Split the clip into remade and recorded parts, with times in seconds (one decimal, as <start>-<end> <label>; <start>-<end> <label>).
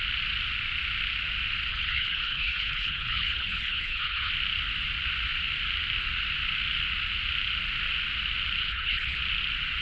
0.0-1.7 recorded; 1.7-4.3 remade; 4.3-8.6 recorded; 8.6-9.2 remade; 9.2-9.8 recorded